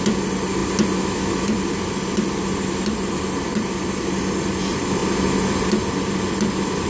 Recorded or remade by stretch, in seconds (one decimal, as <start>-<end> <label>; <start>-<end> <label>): 0.0-6.9 recorded